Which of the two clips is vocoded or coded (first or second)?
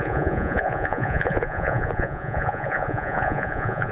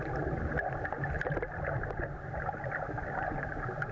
first